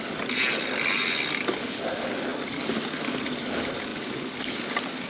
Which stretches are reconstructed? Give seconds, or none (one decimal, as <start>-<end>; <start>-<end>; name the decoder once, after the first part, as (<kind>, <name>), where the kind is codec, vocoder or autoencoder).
none